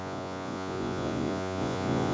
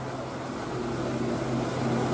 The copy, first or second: first